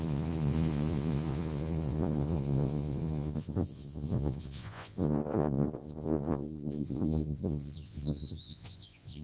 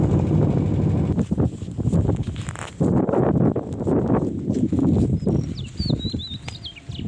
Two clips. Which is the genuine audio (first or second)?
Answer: second